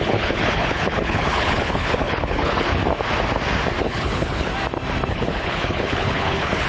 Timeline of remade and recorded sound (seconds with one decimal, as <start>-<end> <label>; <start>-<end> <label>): 0.0-2.8 remade; 2.8-3.8 recorded; 3.8-4.5 remade; 4.5-5.1 recorded; 5.1-6.7 remade